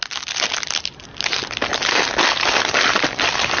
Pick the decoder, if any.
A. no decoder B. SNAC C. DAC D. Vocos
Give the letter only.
A